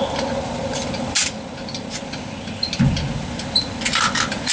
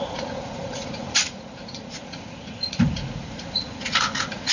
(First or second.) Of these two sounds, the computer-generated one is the second